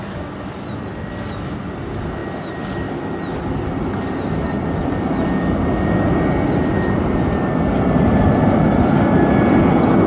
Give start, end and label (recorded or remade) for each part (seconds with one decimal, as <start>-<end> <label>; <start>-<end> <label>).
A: 0.0-10.1 recorded